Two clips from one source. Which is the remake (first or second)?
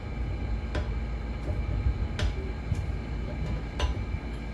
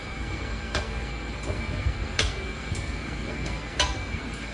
second